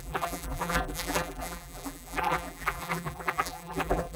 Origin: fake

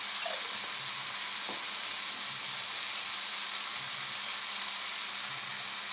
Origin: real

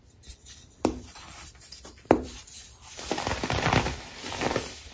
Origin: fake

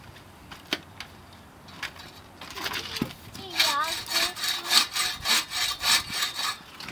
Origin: real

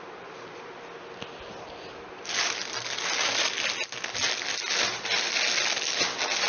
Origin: real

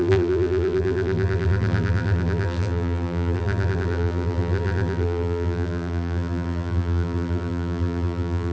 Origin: fake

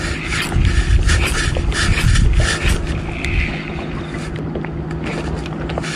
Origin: real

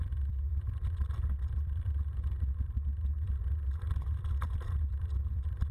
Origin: fake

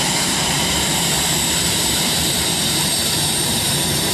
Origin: fake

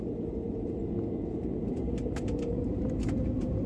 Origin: fake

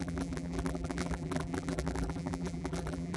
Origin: fake